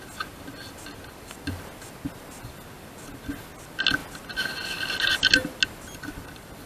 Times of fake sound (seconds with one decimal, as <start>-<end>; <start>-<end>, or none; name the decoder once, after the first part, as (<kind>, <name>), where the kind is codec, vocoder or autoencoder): none